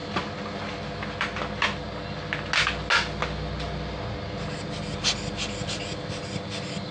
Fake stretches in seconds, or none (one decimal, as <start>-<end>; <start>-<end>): none